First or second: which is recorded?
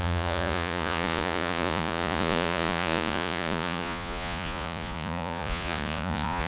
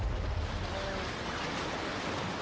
second